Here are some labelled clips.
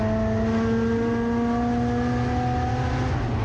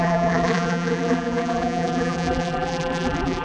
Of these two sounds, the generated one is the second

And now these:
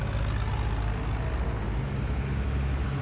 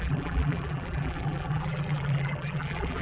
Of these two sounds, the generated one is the second